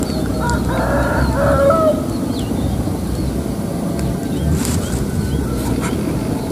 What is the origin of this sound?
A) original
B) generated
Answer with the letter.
A